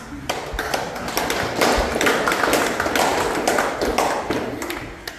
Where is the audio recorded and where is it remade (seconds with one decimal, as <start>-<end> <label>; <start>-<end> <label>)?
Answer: 0.0-5.2 recorded